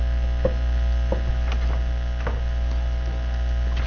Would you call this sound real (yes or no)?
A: yes